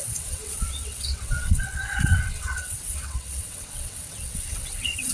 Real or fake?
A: fake